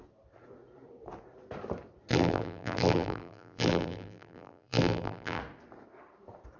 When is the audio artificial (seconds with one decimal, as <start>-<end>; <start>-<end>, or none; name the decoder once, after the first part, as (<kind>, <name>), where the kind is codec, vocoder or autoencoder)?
2.1-5.4 (vocoder, BigVGAN v2)